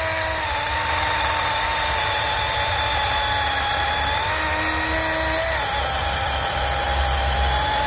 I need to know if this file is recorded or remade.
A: recorded